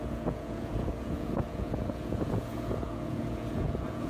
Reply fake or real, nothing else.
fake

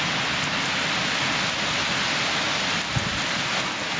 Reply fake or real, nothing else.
real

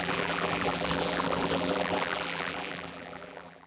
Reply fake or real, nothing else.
fake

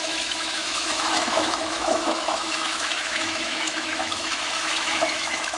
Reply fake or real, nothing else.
fake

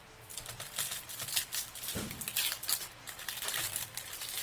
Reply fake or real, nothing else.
real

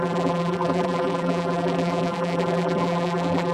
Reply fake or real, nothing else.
fake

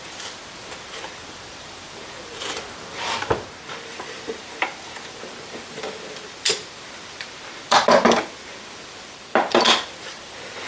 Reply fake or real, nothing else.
fake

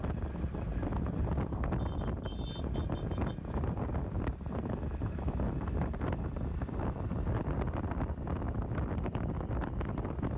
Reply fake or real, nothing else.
real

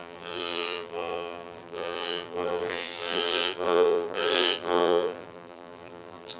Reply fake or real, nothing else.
fake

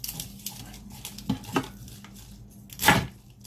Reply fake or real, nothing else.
real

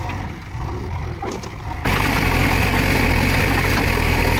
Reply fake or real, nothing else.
real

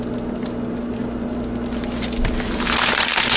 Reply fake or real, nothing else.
real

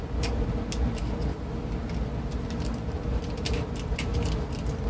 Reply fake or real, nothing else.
real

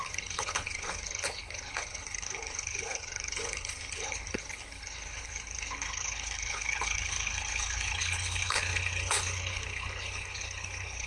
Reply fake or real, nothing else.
fake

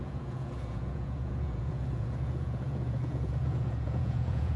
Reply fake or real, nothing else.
fake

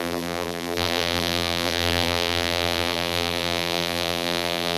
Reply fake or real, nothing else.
fake